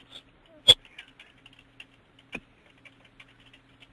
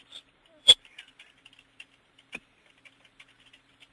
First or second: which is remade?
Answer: second